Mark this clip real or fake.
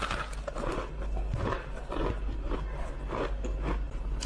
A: real